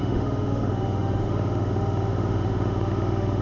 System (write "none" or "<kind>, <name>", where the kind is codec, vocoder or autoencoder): autoencoder, DAC-VAE